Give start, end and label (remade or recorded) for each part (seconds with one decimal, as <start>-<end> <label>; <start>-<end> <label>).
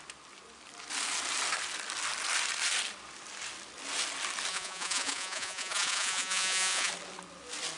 0.0-4.5 recorded; 4.5-6.9 remade; 6.9-7.8 recorded